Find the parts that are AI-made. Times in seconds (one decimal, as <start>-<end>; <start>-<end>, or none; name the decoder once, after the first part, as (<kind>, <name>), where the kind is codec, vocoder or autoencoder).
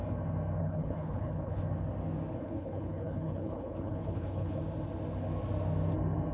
0.6-1.6 (codec, HILCodec); 2.4-4.6